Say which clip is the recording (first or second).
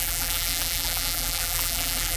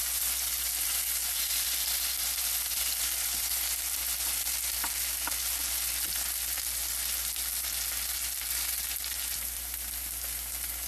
second